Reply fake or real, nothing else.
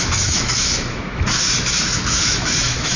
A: fake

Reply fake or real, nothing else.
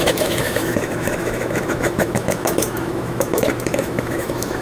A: fake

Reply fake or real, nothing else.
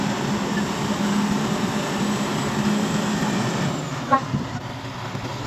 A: real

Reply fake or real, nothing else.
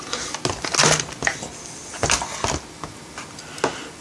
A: real